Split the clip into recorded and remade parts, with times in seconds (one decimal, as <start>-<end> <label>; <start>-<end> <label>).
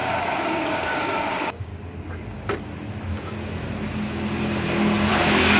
0.0-1.7 remade; 1.7-5.1 recorded; 5.1-5.6 remade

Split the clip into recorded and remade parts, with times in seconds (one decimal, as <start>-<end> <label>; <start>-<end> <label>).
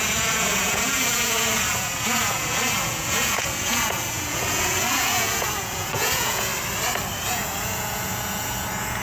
0.0-6.5 remade; 6.5-7.3 recorded; 7.3-9.0 remade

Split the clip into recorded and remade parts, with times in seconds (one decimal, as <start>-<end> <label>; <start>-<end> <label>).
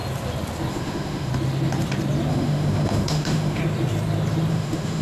0.0-0.7 recorded; 0.7-1.3 remade; 1.3-2.3 recorded; 2.3-3.6 remade; 3.6-4.5 recorded; 4.5-5.0 remade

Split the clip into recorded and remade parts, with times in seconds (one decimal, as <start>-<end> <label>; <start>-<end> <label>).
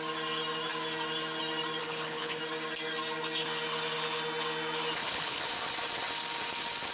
0.0-1.8 recorded; 1.8-2.4 remade; 2.4-5.0 recorded; 5.0-5.5 remade; 5.5-6.9 recorded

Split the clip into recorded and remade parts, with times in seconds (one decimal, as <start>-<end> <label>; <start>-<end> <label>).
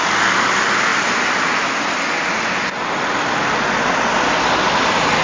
0.0-0.9 recorded; 0.9-1.7 remade; 1.7-5.2 recorded